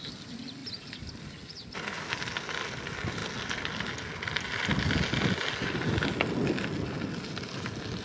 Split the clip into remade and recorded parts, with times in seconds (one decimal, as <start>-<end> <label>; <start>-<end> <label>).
0.0-0.6 recorded; 0.6-2.2 remade; 2.2-8.0 recorded